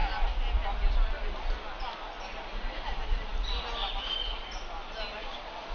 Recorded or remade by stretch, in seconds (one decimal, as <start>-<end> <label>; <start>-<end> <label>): 0.0-5.7 recorded